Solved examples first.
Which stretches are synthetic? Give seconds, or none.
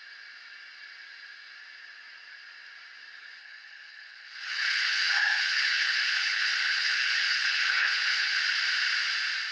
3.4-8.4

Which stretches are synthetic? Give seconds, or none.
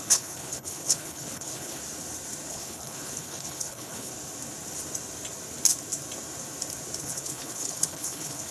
0.0-1.8; 2.5-4.1; 7.0-8.5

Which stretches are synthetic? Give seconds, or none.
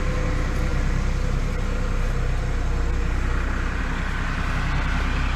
none